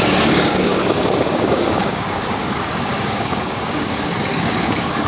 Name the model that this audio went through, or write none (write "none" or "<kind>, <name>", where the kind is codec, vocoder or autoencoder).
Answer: codec, DAC